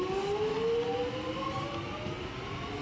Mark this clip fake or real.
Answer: real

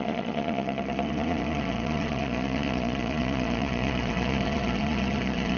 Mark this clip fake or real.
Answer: fake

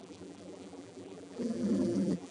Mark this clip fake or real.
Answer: fake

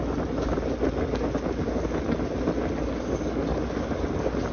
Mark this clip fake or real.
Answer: real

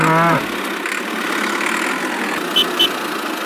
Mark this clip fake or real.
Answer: real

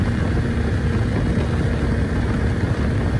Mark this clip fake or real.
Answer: real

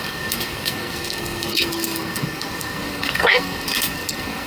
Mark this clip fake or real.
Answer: fake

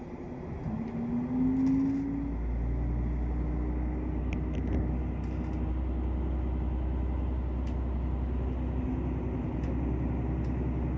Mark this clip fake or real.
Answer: real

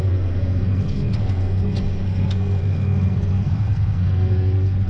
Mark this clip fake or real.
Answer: fake